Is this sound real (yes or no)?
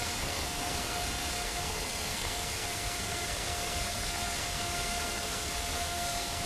no